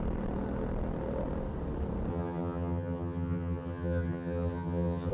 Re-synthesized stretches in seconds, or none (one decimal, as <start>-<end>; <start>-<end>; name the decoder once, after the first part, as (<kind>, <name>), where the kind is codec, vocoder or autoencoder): 2.1-5.1 (vocoder, HiFi-GAN)